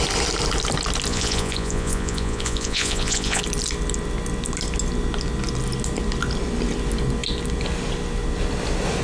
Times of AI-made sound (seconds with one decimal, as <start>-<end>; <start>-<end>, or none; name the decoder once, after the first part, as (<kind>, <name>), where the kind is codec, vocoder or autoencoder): 1.1-3.4 (vocoder, Vocos)